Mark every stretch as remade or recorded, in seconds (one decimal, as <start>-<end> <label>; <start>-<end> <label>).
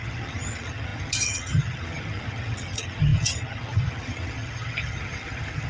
0.0-5.7 remade